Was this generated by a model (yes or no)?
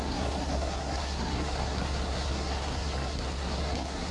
yes